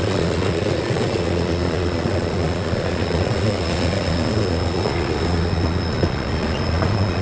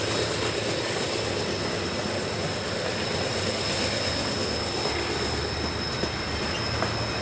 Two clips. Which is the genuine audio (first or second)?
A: second